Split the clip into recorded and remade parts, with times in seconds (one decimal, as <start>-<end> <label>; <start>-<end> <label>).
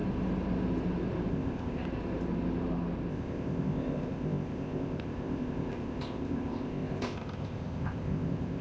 0.0-1.3 recorded; 1.3-1.8 remade; 1.8-3.1 recorded; 3.1-8.6 remade